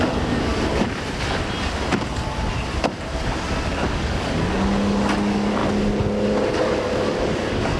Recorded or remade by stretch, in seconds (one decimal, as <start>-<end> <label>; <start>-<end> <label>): 0.0-0.5 remade; 0.5-3.7 recorded; 3.7-5.6 remade; 5.6-6.6 recorded; 6.6-7.8 remade